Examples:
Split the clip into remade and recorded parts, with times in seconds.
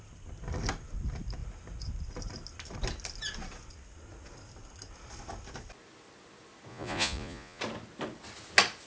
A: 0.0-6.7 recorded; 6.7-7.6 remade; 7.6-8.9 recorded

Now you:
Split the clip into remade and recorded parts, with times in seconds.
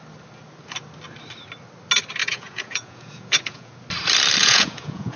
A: 0.0-2.2 recorded; 2.2-3.7 remade; 3.7-4.4 recorded; 4.4-5.2 remade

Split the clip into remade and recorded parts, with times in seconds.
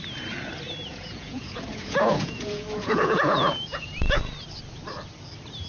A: 0.0-0.9 recorded; 0.9-4.2 remade; 4.2-5.7 recorded